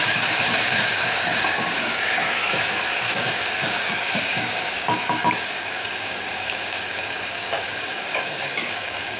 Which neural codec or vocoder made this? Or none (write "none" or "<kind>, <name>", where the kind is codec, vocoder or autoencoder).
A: codec, DAC